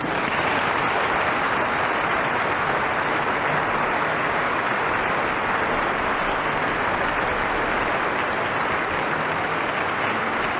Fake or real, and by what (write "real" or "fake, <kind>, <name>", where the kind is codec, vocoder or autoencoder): real